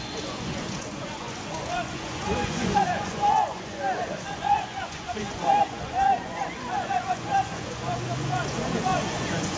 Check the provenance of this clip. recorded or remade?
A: remade